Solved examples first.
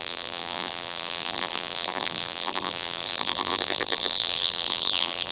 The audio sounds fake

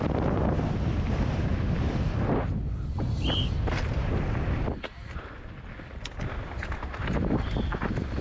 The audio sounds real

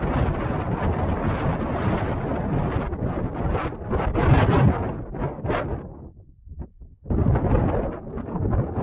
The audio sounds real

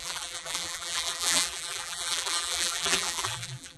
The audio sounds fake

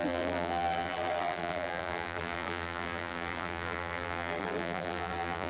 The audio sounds fake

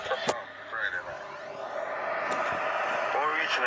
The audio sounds real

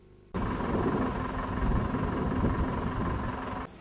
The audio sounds real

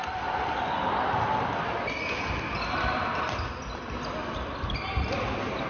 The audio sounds real